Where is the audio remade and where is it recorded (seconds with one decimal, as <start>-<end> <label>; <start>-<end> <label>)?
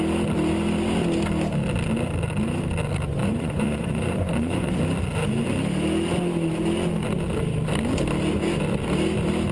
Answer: 0.0-3.2 recorded; 3.2-4.7 remade; 4.7-9.5 recorded